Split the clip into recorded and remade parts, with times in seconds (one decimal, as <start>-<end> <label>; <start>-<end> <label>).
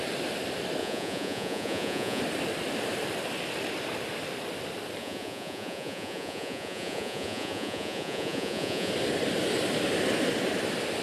0.0-0.8 recorded; 0.8-2.2 remade; 2.2-5.0 recorded; 5.0-8.9 remade; 8.9-11.0 recorded